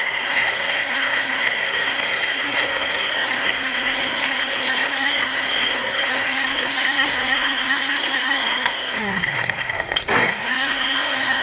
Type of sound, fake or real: fake